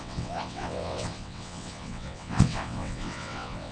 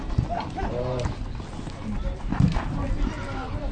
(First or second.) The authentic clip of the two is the second